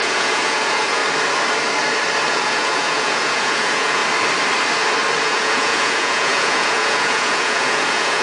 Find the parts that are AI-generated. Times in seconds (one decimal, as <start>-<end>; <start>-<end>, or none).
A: 0.0-1.0; 2.3-4.0; 5.2-8.2